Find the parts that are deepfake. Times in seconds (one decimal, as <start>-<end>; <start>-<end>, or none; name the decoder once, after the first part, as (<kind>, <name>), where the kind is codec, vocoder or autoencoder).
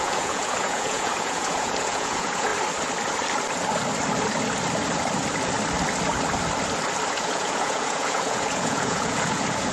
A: 0.0-2.5 (vocoder, Vocos); 7.1-9.7